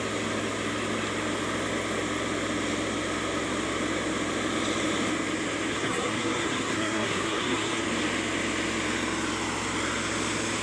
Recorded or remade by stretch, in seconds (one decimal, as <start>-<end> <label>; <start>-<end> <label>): 0.0-5.7 recorded; 5.7-7.8 remade; 7.8-10.6 recorded